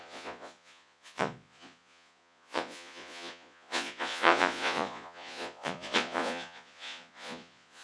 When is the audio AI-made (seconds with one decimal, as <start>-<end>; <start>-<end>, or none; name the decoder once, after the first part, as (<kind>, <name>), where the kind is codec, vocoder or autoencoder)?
0.0-7.8 (vocoder, Vocos)